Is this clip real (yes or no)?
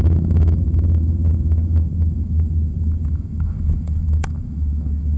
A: no